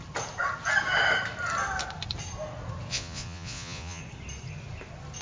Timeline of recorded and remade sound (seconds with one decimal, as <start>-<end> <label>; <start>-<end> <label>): 0.0-2.9 recorded; 2.9-4.0 remade; 4.0-5.2 recorded